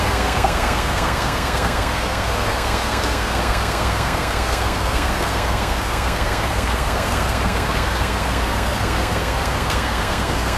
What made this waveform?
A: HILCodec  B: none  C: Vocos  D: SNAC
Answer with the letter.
D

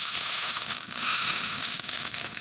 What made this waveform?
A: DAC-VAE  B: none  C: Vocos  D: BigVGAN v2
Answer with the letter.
A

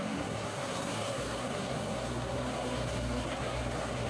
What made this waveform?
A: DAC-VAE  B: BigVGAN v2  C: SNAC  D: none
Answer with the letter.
C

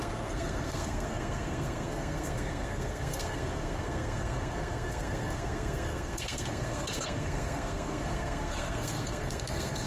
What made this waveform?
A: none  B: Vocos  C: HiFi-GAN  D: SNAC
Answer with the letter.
D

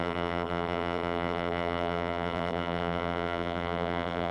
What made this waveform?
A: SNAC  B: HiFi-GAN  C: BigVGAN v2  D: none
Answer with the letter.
C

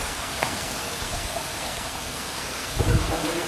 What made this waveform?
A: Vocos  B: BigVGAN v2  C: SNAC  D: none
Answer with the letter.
C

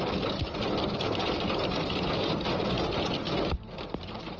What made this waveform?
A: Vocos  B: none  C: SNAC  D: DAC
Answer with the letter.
B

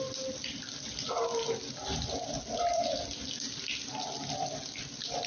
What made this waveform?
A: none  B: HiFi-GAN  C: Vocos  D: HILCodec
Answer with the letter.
A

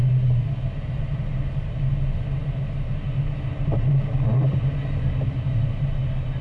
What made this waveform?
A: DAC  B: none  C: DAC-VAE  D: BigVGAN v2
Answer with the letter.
B